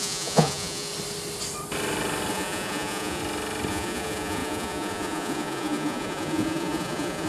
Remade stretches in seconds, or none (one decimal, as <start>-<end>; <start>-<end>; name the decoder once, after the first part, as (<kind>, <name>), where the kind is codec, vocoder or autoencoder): 0.0-0.9 (vocoder, Vocos); 2.3-3.2; 3.7-7.3